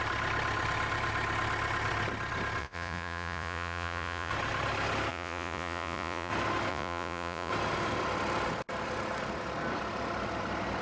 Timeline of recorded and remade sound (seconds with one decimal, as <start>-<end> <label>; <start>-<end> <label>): 0.0-2.6 recorded; 2.6-4.3 remade; 4.3-5.1 recorded; 5.1-6.3 remade; 6.3-6.7 recorded; 6.7-7.5 remade; 7.5-10.8 recorded